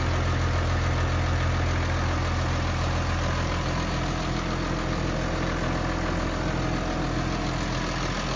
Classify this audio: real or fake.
real